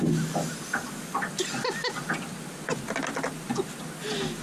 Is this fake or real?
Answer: real